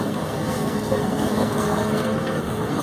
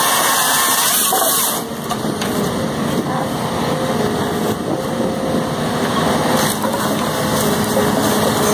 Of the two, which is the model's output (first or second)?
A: first